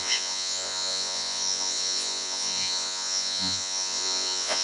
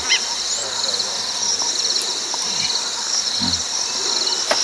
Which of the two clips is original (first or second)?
second